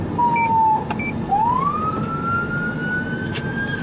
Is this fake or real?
real